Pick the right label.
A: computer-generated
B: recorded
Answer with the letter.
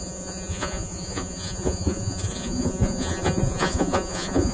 A